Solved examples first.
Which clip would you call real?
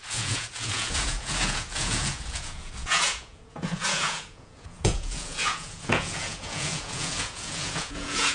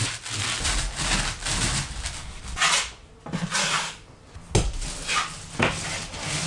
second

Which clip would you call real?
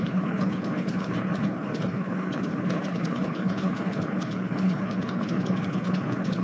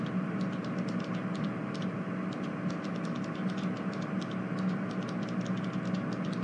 second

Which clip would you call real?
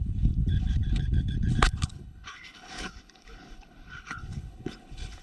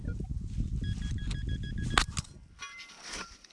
second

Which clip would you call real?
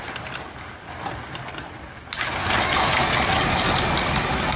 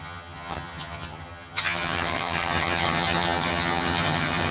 first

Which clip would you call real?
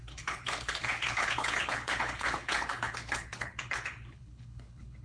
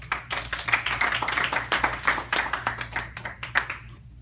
second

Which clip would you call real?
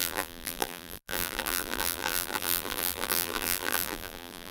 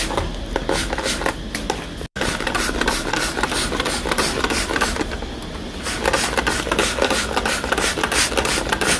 second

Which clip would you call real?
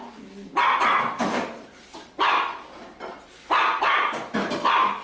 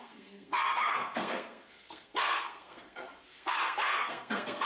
first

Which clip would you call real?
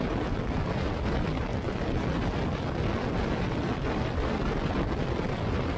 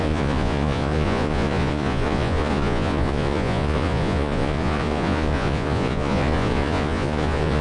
first